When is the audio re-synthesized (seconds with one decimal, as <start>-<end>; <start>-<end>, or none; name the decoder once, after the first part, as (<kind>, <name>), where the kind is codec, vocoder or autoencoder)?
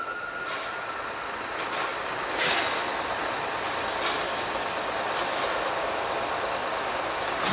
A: none